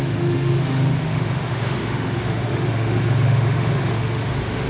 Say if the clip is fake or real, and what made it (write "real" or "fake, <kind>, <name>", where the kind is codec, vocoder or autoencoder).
fake, autoencoder, DAC-VAE